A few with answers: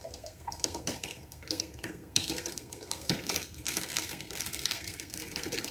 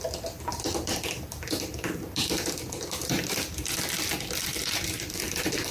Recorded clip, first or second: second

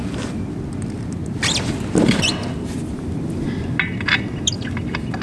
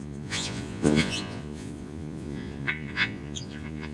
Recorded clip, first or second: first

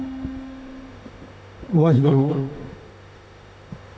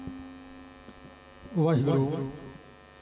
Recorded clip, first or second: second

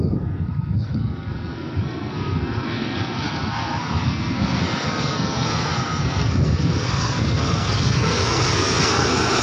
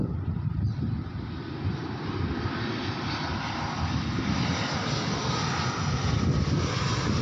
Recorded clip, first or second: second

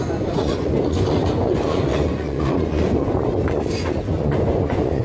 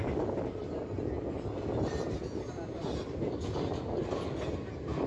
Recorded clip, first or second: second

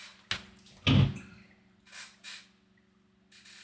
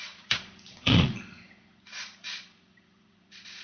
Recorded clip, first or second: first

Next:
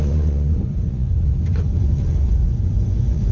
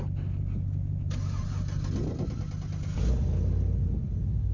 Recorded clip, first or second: second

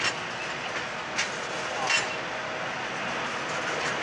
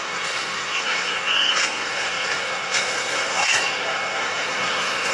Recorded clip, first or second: first